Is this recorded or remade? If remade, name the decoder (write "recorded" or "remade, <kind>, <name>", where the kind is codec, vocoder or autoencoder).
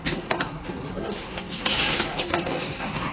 remade, codec, SNAC